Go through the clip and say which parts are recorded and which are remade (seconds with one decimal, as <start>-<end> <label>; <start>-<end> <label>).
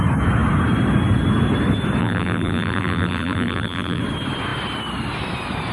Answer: 0.0-2.0 recorded; 2.0-4.0 remade; 4.0-5.7 recorded